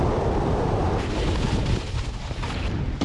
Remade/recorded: recorded